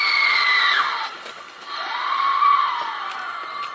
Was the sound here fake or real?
real